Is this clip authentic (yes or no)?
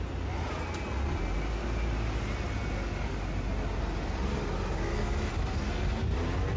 yes